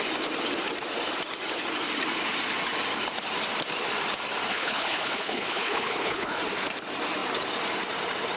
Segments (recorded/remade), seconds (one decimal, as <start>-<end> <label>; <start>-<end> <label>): 0.0-4.5 recorded; 4.5-6.4 remade; 6.4-8.4 recorded

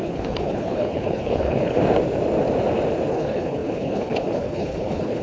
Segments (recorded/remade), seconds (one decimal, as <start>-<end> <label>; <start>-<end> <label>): 0.0-1.8 remade; 1.8-3.1 recorded; 3.1-5.2 remade

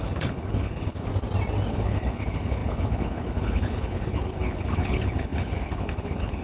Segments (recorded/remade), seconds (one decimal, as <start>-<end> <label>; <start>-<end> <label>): 0.0-1.1 remade; 1.1-1.7 recorded; 1.7-6.4 remade

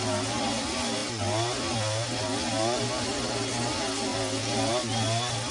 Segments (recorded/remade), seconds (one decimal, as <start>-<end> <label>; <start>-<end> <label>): 0.0-5.5 recorded

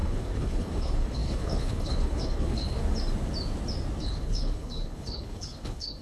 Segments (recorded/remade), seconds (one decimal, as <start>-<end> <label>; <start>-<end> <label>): 0.0-2.8 remade; 2.8-4.0 recorded; 4.0-6.0 remade

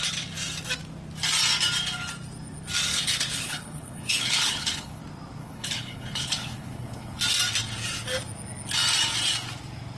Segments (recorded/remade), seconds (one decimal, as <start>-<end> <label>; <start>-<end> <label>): 0.0-2.9 recorded; 2.9-5.0 remade; 5.0-5.4 recorded; 5.4-7.2 remade; 7.2-10.0 recorded

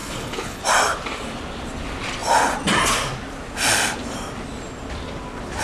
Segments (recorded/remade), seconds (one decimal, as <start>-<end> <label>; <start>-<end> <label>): 0.0-0.6 remade; 0.6-5.6 recorded